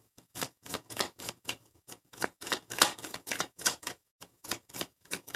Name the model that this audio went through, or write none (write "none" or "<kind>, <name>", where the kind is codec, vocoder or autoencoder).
codec, DAC